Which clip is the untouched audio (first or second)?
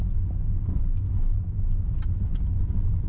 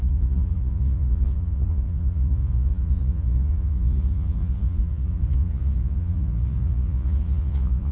first